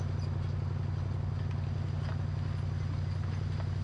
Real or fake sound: real